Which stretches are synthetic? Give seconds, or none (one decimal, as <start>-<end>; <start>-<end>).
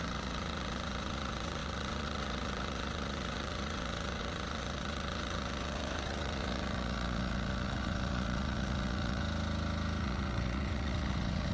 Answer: 0.0-9.2; 10.0-11.5